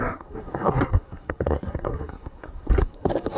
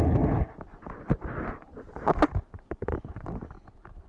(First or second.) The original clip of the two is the second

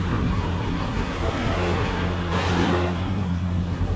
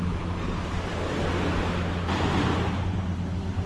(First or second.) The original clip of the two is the second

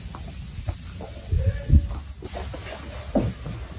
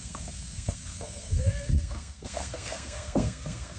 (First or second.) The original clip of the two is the first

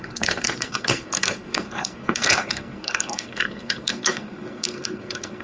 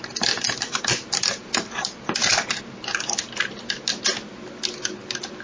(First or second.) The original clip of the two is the second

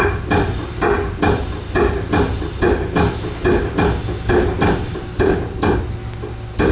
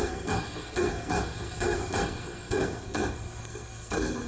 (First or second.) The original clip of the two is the first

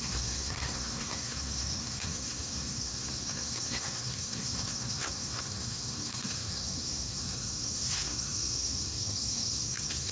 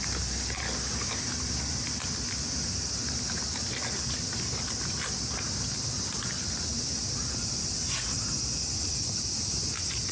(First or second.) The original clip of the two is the second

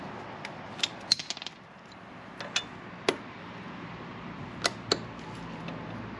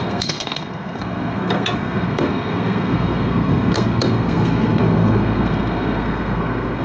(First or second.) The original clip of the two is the first